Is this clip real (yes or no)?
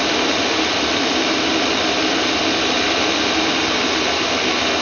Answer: no